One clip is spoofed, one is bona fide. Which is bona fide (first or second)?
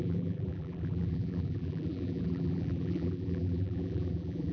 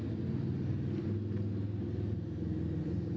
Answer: second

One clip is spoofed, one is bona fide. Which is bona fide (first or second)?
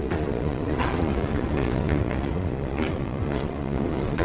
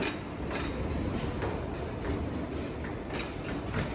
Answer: second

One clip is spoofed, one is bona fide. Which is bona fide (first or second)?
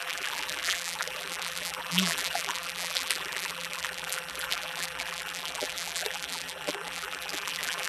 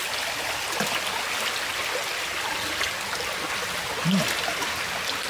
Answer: second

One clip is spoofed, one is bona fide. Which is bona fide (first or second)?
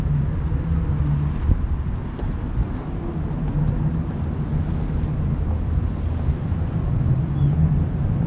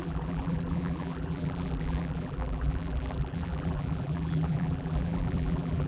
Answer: first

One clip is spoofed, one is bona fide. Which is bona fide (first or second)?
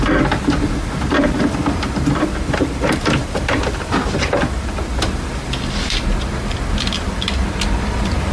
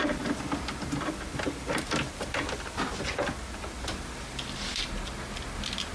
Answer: second